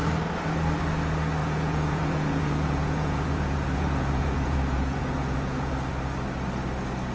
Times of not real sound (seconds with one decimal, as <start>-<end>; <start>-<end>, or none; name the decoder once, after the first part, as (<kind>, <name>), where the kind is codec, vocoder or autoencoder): 1.4-5.7 (vocoder, Vocos)